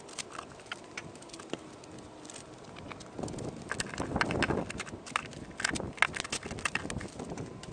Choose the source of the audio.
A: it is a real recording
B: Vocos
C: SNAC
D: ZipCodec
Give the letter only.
A